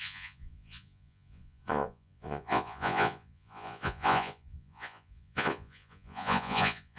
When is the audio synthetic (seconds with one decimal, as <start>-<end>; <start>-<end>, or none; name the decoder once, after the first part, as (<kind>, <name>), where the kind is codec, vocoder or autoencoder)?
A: 0.0-7.0 (vocoder, Vocos)